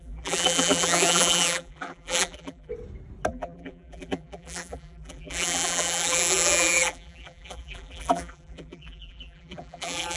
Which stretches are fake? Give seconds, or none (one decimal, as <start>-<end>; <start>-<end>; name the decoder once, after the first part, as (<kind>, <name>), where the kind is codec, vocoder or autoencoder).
0.0-2.7 (vocoder, BigVGAN v2); 3.3-10.2